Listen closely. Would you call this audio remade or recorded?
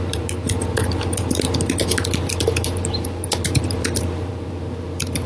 remade